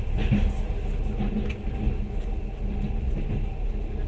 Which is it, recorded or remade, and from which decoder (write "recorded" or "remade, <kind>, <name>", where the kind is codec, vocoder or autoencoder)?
recorded